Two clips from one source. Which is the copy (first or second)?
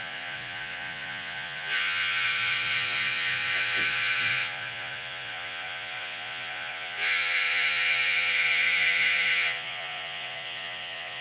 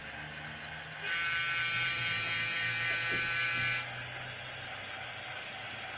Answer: first